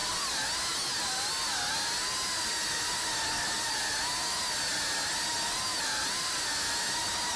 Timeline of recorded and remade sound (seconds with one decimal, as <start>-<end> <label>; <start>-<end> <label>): 0.0-7.4 recorded